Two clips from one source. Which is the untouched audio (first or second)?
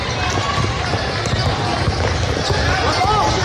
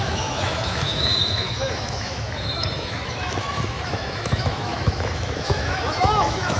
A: first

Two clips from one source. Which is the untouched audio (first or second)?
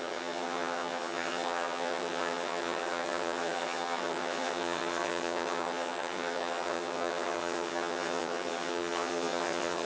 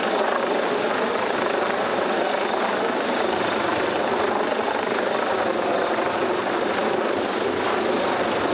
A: second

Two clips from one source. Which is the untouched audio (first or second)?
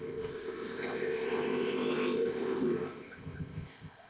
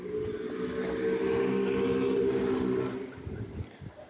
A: second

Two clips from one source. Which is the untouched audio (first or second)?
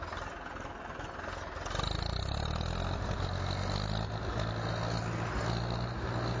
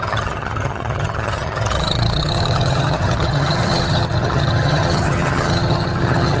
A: first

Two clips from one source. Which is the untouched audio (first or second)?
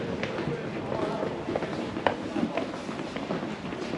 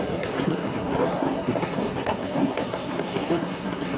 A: first